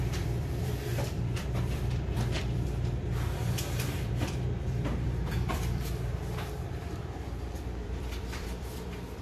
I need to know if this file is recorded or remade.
remade